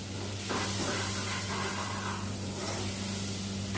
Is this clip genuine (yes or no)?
yes